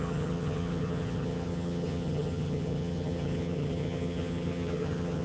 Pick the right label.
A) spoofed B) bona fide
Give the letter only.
A